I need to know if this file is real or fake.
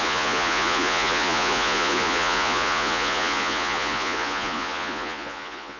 fake